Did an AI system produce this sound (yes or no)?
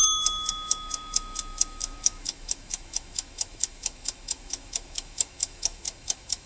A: yes